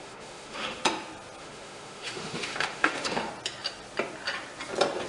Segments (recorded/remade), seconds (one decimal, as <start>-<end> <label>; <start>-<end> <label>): 0.0-0.8 remade; 0.8-1.4 recorded; 1.4-3.3 remade; 3.3-5.1 recorded